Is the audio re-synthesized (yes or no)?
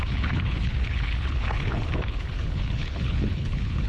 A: yes